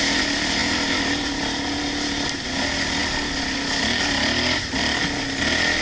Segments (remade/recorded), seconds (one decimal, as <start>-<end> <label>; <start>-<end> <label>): 0.0-5.8 recorded